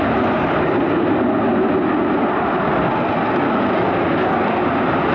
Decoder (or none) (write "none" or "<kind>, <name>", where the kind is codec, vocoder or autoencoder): none